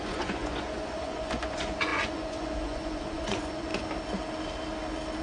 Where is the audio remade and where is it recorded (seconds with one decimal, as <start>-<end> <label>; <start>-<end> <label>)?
0.0-3.7 remade; 3.7-5.2 recorded